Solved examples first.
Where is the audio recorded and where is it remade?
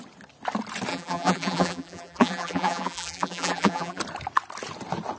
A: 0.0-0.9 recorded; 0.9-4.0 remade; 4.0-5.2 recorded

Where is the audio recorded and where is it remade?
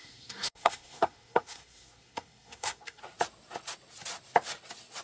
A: 0.0-3.0 remade; 3.0-5.0 recorded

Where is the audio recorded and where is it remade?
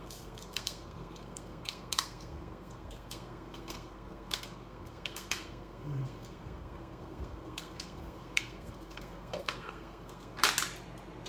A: 0.0-10.4 remade; 10.4-11.3 recorded